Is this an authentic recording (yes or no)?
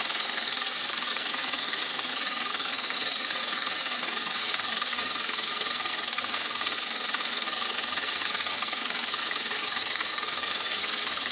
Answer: no